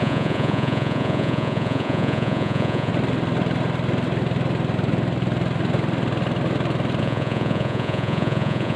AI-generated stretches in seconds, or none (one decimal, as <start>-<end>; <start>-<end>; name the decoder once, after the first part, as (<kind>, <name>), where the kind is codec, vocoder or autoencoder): 0.0-2.9 (vocoder, Vocos); 7.0-8.8